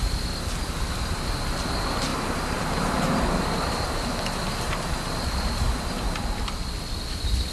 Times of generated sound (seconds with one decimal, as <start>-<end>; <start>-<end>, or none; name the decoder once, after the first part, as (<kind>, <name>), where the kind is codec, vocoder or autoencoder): 2.1-6.2 (vocoder, BigVGAN v2)